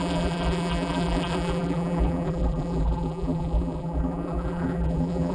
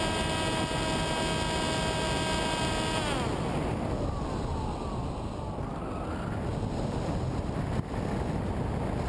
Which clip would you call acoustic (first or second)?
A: second